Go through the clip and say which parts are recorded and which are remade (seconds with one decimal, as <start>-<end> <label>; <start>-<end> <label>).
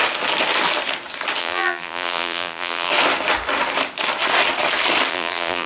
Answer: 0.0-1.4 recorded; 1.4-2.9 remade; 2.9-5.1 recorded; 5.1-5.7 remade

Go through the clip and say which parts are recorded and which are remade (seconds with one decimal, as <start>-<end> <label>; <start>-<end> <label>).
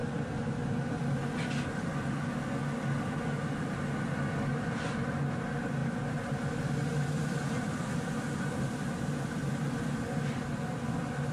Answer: 0.0-4.5 recorded; 4.5-5.1 remade; 5.1-5.8 recorded; 5.8-9.5 remade; 9.5-11.3 recorded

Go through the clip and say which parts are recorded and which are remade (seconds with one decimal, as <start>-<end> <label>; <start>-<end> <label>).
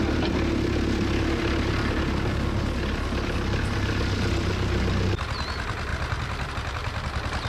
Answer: 0.0-7.5 recorded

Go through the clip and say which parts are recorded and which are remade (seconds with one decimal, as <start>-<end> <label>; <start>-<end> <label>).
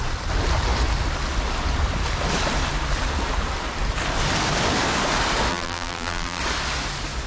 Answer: 0.0-5.5 recorded; 5.5-6.4 remade; 6.4-7.3 recorded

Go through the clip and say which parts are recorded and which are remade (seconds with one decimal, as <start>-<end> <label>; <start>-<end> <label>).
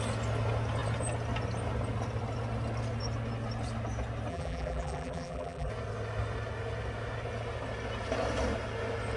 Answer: 0.0-4.3 recorded; 4.3-5.7 remade; 5.7-9.2 recorded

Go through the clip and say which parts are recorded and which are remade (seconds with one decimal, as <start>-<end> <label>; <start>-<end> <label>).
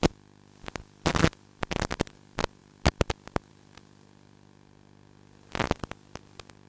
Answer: 0.0-6.7 recorded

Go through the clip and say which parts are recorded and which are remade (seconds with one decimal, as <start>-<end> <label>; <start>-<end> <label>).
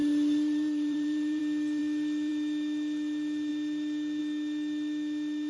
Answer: 0.0-1.4 remade; 1.4-5.5 recorded